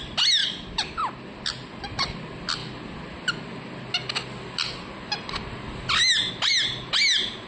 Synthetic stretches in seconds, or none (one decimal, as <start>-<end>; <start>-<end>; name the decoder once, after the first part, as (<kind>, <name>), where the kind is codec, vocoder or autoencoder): none